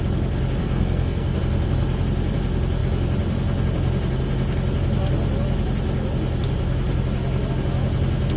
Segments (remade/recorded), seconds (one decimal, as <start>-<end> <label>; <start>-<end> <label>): 0.0-0.6 recorded; 0.6-1.4 remade; 1.4-8.4 recorded